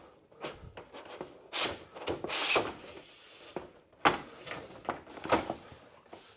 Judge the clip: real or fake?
real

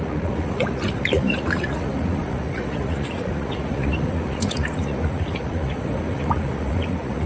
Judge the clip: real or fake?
fake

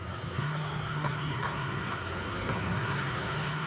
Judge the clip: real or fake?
fake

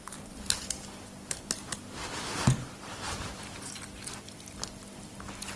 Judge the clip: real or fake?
fake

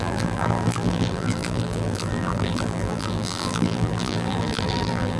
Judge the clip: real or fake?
fake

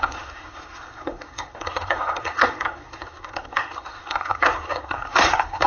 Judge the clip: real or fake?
fake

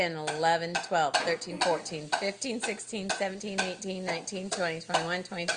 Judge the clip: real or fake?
real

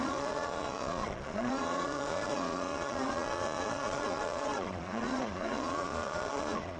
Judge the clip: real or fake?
fake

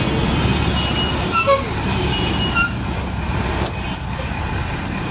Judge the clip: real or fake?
real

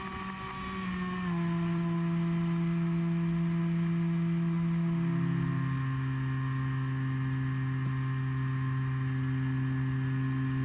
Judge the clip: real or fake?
real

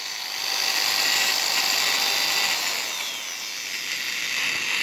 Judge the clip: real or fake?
real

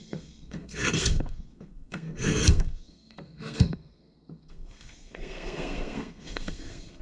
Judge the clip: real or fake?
fake